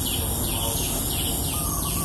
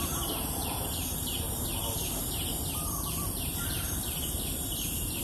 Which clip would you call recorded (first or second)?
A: first